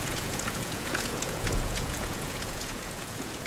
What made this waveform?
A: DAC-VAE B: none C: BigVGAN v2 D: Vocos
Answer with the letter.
D